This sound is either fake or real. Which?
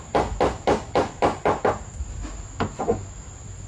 real